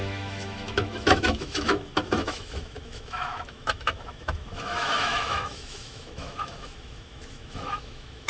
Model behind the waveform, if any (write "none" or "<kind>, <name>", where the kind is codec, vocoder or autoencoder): autoencoder, DAC-VAE